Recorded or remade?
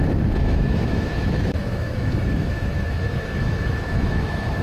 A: remade